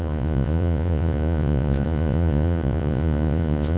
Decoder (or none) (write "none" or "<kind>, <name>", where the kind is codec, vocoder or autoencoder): vocoder, Vocos